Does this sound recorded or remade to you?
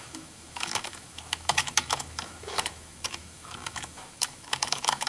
remade